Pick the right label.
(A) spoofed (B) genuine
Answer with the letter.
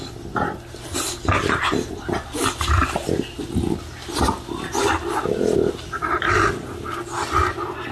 B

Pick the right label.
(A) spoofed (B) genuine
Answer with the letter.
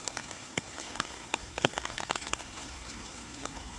A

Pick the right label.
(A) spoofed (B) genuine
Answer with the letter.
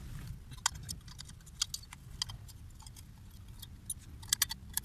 B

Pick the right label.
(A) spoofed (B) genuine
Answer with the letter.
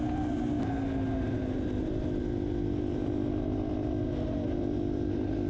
B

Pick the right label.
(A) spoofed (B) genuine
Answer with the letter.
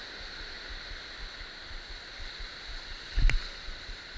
B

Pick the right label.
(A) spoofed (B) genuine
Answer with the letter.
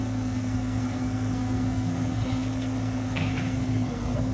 A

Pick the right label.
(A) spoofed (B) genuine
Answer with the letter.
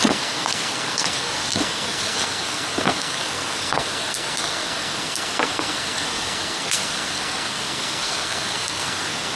A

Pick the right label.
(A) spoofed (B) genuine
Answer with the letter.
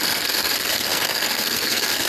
A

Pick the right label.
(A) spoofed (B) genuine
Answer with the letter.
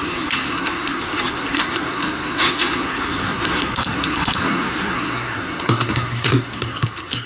A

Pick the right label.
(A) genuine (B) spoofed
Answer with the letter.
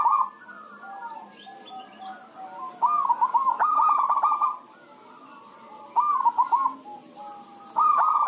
A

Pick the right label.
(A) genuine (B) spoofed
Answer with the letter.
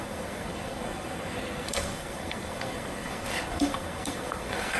B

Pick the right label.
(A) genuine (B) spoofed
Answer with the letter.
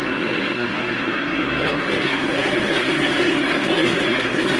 B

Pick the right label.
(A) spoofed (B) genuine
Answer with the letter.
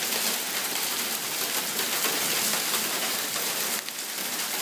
B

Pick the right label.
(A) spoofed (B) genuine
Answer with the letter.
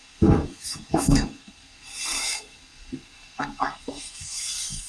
A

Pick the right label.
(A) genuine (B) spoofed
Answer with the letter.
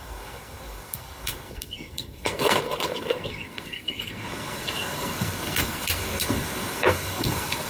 B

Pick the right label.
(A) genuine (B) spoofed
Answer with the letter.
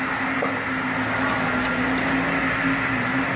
A